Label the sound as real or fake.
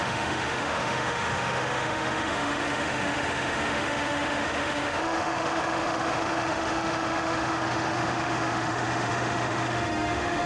fake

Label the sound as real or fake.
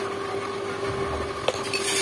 real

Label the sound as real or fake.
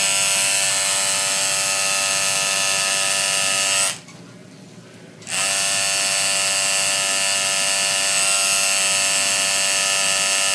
real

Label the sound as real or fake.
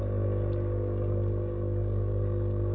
fake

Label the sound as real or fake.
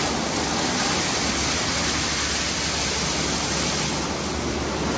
real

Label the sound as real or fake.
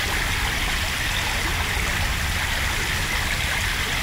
real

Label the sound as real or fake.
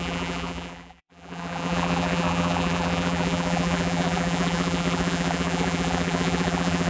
fake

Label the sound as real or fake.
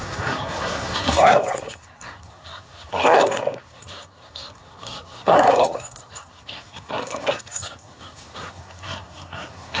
fake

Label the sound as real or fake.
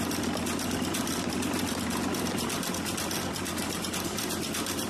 fake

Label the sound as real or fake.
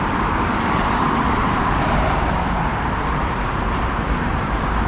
fake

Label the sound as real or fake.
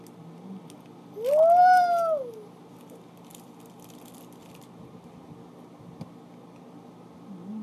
real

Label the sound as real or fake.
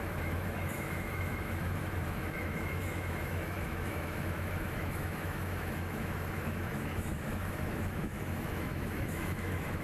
fake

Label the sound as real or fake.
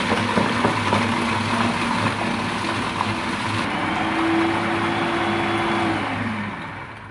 real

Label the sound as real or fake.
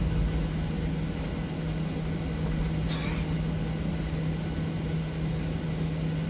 real